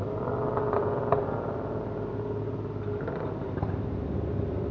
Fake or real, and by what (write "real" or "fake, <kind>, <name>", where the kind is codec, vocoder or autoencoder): real